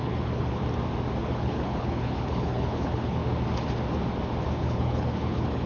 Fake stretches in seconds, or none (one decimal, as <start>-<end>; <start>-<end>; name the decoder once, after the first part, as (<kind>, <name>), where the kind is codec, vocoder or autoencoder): 0.0-0.6 (codec, HILCodec); 1.2-3.2; 4.5-5.7